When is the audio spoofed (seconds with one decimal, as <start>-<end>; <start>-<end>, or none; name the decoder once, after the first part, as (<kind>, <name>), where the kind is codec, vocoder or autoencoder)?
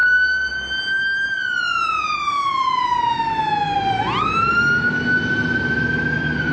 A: none